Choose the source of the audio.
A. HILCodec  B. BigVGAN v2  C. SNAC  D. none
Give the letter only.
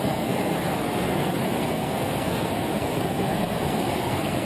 C